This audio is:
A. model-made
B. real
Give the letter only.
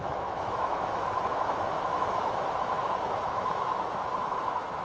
A